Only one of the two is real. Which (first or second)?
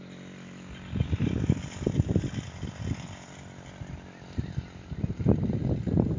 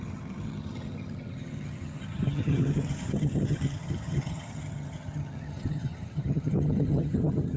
first